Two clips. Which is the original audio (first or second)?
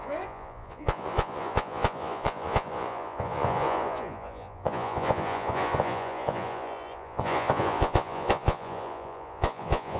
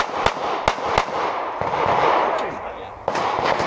second